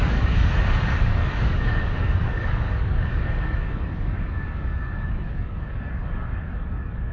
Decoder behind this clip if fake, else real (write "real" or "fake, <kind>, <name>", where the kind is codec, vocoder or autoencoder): fake, codec, DAC